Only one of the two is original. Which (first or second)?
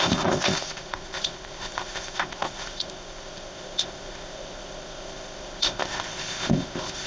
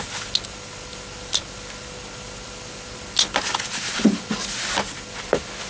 second